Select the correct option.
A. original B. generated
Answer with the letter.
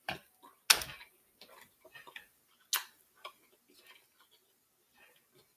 A